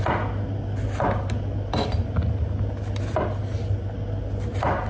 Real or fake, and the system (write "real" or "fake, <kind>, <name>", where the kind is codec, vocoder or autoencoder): real